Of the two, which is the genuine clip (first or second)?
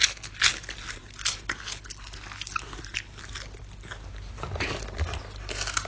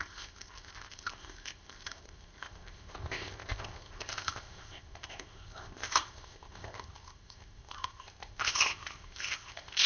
first